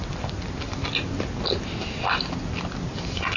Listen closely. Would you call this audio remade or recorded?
recorded